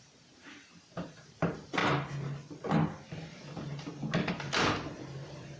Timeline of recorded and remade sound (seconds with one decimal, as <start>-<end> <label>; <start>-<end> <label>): 0.0-1.8 remade; 1.8-5.0 recorded; 5.0-5.6 remade